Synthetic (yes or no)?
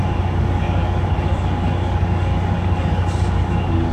yes